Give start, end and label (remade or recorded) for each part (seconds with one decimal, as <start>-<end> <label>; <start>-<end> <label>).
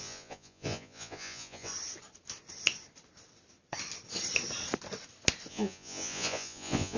0.0-1.7 remade; 1.7-5.5 recorded; 5.5-7.0 remade